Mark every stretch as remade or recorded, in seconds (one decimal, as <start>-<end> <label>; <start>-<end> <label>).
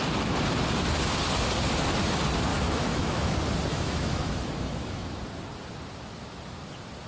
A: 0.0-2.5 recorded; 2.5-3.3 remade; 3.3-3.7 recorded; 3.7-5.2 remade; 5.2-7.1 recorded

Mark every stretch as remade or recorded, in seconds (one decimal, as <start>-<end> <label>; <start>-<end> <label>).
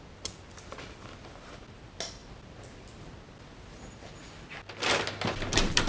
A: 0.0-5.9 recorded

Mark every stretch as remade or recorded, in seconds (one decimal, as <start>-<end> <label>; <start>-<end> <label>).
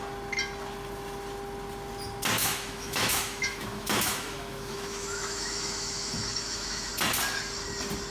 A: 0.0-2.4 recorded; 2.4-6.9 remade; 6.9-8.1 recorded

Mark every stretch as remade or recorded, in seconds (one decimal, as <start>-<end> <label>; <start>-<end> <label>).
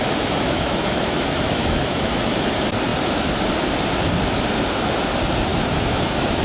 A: 0.0-2.5 remade; 2.5-5.5 recorded; 5.5-6.4 remade